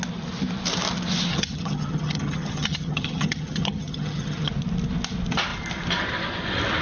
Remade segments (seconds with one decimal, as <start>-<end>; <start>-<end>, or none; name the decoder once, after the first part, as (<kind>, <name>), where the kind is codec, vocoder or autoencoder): 1.3-4.5 (vocoder, HiFi-GAN)